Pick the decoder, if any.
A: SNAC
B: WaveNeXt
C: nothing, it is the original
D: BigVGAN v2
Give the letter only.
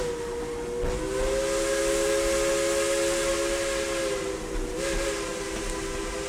C